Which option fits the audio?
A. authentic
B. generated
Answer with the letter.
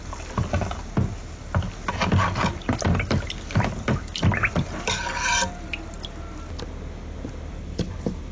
A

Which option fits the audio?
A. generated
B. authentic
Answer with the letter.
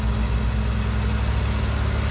B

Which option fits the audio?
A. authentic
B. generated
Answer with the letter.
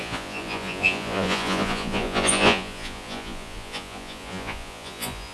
B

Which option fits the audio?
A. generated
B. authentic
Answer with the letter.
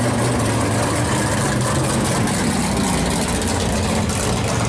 B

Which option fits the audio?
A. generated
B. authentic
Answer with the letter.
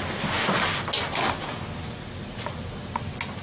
B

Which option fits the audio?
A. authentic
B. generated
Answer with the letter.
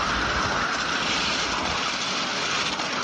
A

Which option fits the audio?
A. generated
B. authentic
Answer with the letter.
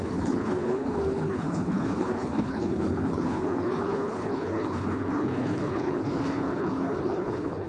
A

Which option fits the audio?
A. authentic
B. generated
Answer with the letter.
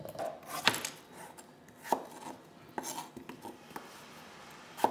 A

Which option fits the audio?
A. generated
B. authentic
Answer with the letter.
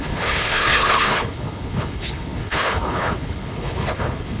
A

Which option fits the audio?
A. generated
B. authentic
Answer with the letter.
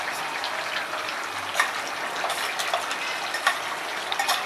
B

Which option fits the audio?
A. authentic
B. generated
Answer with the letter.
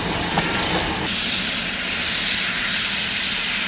A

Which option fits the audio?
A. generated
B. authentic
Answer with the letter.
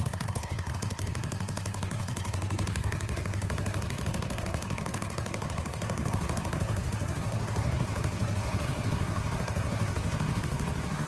A